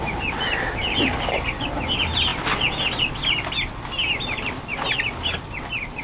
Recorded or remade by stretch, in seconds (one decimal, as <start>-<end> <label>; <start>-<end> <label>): 0.0-6.0 recorded